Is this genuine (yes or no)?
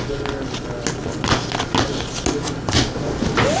yes